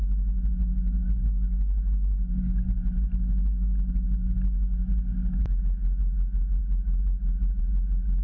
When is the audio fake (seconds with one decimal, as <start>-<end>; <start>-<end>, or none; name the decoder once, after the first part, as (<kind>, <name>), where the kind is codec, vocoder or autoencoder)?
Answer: none